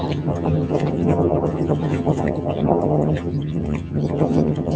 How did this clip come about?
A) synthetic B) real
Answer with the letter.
A